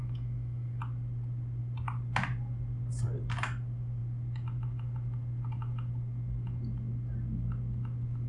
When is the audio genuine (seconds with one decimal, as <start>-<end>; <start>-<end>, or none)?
0.8-8.3

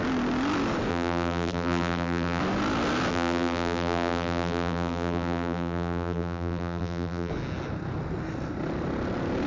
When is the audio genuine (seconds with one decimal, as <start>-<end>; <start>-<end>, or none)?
0.0-0.9; 2.4-3.1; 7.3-9.5

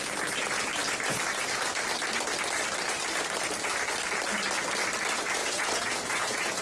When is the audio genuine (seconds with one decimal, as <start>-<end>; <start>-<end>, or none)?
0.0-5.4

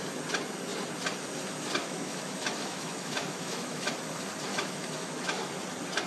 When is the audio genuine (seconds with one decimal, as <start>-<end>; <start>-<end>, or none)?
0.0-1.8; 3.9-4.5; 5.5-6.1